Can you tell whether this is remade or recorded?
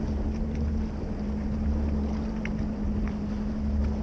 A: recorded